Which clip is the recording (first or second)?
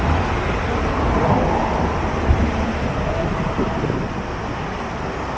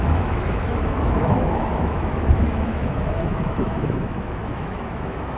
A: first